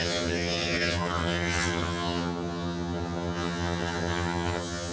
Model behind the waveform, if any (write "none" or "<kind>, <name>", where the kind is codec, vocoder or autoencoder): vocoder, HiFi-GAN